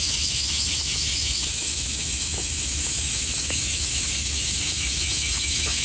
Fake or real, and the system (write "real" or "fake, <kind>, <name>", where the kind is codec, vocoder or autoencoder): fake, autoencoder, DAC-VAE